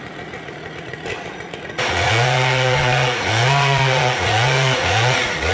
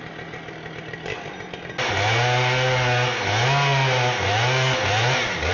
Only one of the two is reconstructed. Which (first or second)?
first